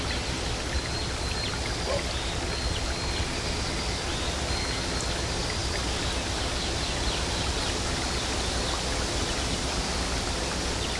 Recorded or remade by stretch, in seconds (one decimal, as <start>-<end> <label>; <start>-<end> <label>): 0.0-11.0 recorded